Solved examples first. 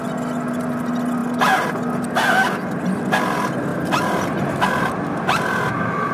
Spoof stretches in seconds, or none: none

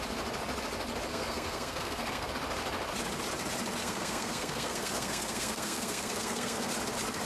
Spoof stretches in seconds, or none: 1.1-2.3 (codec, SNAC); 3.8-6.7

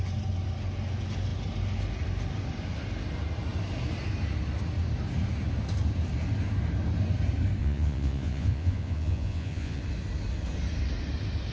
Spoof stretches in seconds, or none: 7.6-9.8 (vocoder, Vocos)